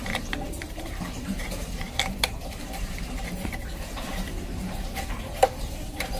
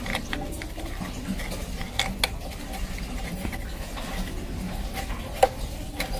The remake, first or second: first